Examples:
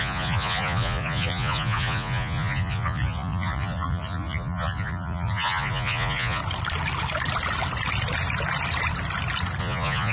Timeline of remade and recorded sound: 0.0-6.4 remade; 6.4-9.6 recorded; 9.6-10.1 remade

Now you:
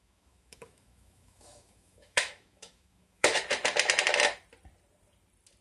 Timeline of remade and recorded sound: 0.0-3.4 remade; 3.4-5.6 recorded

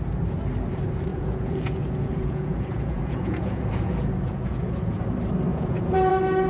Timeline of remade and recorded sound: 0.0-1.1 recorded; 1.1-5.0 remade; 5.0-5.5 recorded; 5.5-6.1 remade; 6.1-6.5 recorded

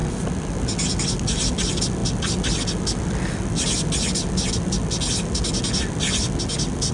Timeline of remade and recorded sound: 0.0-6.9 recorded

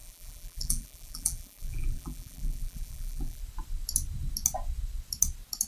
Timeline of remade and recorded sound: 0.0-3.4 remade; 3.4-5.7 recorded

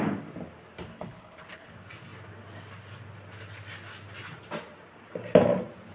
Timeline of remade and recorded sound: 0.0-0.9 recorded; 0.9-1.7 remade; 1.7-5.9 recorded

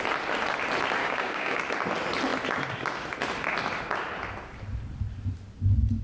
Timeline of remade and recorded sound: 0.0-1.0 recorded; 1.0-1.6 remade; 1.6-6.0 recorded

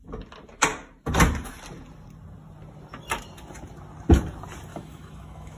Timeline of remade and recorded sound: 0.0-4.7 recorded; 4.7-5.6 remade